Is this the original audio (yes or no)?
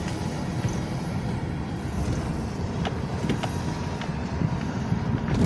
no